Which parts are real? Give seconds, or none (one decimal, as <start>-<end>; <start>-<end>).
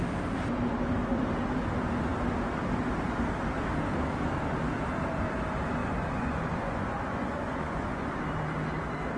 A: 0.0-5.8; 8.1-9.2